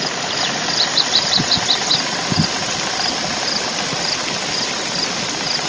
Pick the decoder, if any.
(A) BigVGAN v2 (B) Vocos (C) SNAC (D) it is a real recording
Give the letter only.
A